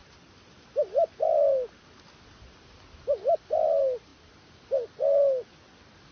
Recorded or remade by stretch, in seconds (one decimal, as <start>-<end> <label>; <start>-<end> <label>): 0.0-6.1 recorded